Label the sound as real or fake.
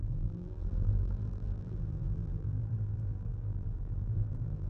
fake